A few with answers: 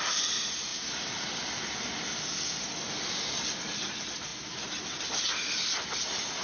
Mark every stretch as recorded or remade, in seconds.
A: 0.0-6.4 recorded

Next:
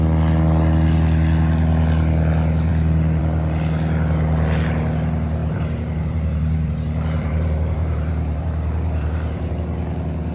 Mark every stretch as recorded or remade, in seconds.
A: 0.0-5.4 recorded; 5.4-9.5 remade; 9.5-10.3 recorded